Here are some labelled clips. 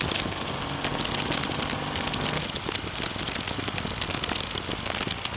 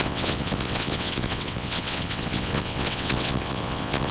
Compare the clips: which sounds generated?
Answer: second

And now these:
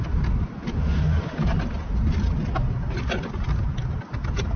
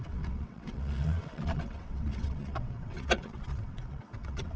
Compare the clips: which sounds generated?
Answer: second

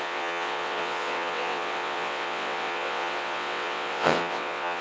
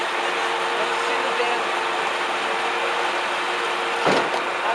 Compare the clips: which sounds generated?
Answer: first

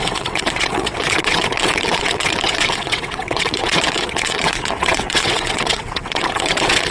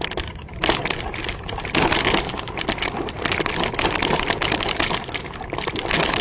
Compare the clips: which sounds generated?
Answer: first